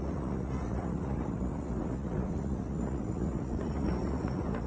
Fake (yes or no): yes